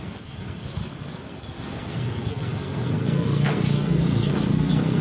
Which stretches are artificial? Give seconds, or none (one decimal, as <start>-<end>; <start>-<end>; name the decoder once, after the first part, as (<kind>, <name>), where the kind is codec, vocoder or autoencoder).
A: 0.0-5.0 (codec, SNAC)